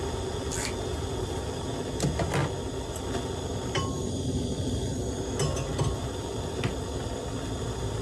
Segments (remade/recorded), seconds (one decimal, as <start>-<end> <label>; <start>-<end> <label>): 0.0-8.0 recorded